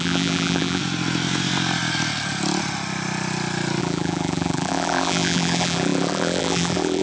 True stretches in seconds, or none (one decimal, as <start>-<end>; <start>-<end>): 0.8-3.8